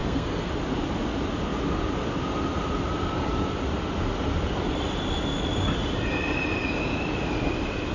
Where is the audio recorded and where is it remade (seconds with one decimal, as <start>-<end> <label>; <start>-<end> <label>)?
0.0-0.5 remade; 0.5-7.9 recorded